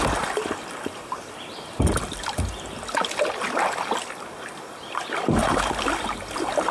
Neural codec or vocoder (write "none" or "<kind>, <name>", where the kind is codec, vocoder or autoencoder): none